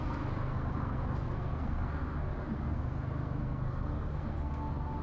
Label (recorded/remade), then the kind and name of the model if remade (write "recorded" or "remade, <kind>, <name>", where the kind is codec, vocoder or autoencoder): remade, codec, SNAC